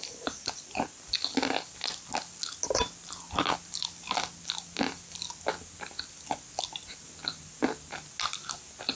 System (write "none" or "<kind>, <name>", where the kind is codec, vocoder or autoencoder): none